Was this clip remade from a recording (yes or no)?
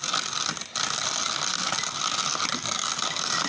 no